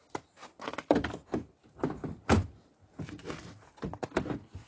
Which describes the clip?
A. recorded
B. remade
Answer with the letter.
A